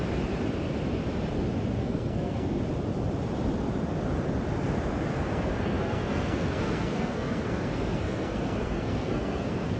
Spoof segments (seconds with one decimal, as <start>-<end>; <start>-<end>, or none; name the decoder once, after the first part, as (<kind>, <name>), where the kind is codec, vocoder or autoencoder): 1.8-2.6 (codec, SNAC); 5.1-9.8